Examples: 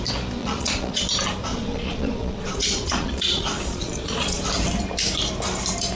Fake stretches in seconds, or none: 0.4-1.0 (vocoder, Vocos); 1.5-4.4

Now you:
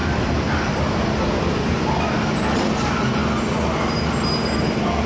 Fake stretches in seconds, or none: none

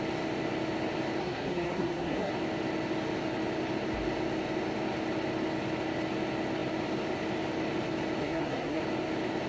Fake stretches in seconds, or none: 1.2-2.3 (codec, SNAC); 8.2-8.8

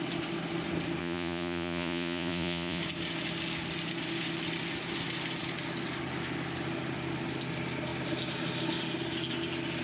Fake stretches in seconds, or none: 1.0-2.8 (vocoder, Vocos)

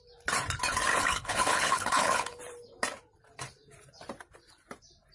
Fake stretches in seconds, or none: 0.9-2.4 (codec, HILCodec)

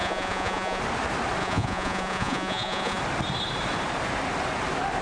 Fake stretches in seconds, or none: 0.0-0.8 (vocoder, Vocos); 1.4-3.0